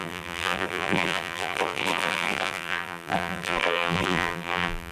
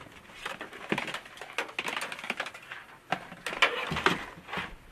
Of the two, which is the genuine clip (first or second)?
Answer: second